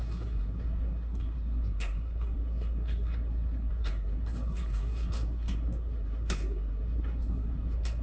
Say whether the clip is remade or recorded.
remade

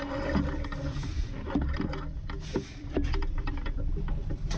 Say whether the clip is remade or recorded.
remade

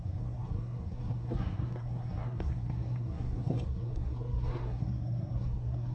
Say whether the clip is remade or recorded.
remade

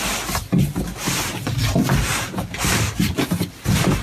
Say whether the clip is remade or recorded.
recorded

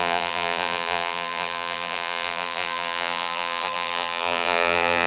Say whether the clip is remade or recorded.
remade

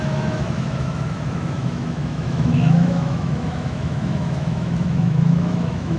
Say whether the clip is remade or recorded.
remade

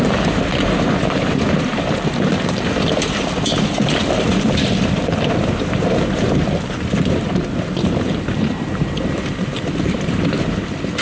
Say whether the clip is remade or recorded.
remade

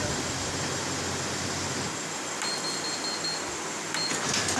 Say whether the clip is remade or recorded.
recorded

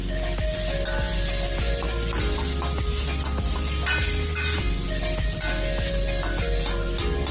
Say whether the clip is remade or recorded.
recorded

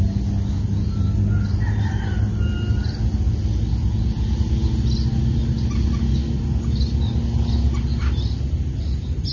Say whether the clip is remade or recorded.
recorded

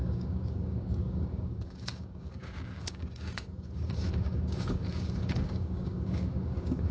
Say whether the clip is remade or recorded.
remade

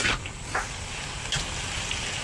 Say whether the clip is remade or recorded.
recorded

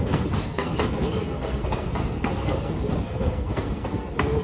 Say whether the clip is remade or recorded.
remade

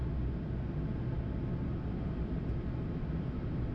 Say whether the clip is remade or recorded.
recorded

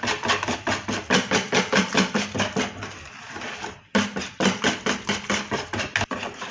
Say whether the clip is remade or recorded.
recorded